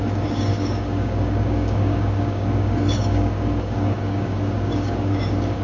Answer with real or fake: fake